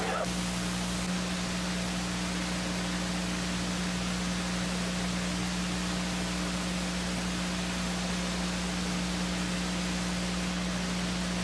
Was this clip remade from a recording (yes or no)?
no